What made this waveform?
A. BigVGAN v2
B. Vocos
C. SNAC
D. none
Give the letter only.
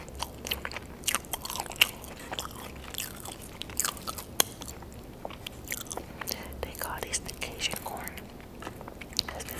D